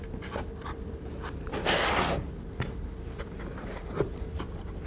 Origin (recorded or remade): remade